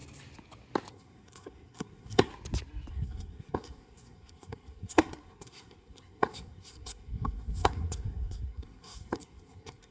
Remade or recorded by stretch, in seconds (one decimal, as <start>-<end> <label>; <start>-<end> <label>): 0.0-0.9 recorded; 0.9-2.3 remade; 2.3-2.9 recorded; 2.9-9.9 remade

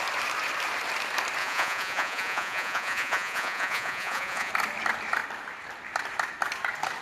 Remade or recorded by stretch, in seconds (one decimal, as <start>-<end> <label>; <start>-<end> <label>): 0.0-1.4 recorded; 1.4-4.5 remade; 4.5-7.0 recorded

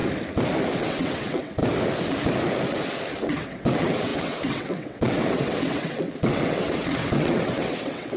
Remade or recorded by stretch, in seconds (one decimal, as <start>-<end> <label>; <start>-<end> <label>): 0.0-0.8 recorded; 0.8-1.6 remade; 1.6-3.2 recorded; 3.2-8.2 remade

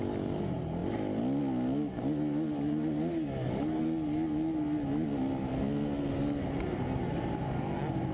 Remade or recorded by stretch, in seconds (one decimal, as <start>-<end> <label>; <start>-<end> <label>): 0.0-8.1 recorded